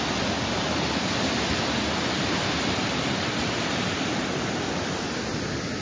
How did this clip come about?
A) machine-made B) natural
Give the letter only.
B